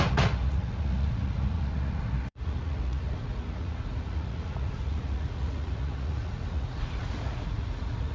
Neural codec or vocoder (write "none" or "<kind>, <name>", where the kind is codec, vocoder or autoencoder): vocoder, Vocos